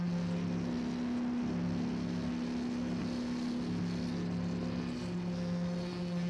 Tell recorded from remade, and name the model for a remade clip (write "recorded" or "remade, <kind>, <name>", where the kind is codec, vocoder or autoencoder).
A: recorded